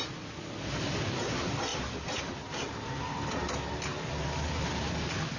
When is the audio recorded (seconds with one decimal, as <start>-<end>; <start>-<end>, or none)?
0.0-1.7; 4.9-5.4